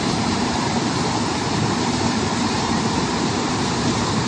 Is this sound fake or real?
fake